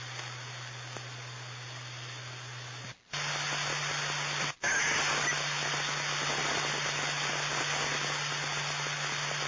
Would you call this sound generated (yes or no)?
no